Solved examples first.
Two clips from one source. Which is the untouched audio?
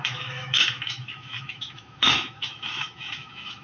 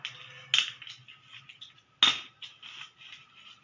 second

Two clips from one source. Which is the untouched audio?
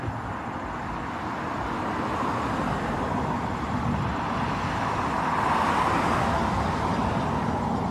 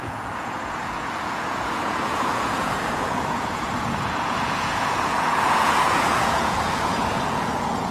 first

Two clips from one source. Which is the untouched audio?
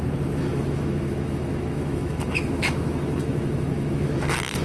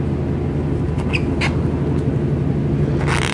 second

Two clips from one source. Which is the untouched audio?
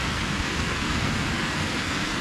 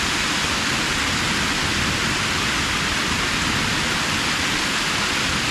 second